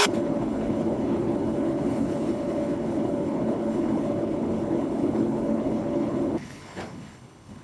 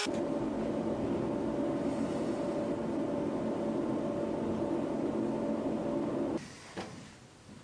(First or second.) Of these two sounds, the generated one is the first